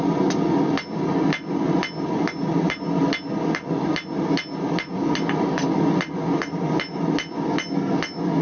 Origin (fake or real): real